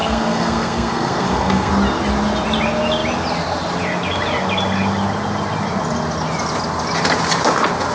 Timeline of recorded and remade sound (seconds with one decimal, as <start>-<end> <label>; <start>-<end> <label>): 0.0-1.7 remade; 1.7-7.9 recorded